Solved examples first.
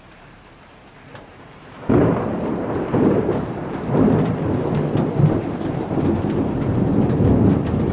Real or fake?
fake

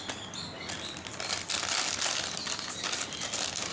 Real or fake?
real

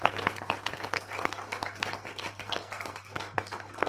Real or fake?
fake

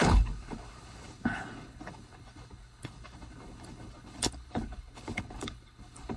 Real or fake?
fake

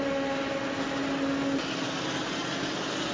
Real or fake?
real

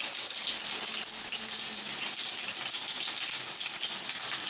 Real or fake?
real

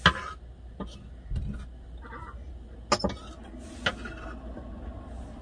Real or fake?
real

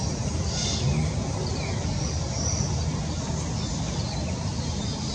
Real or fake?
real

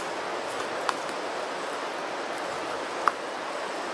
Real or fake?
real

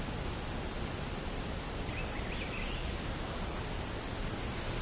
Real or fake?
real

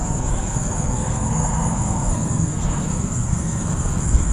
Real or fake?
fake